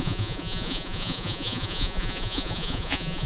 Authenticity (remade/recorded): remade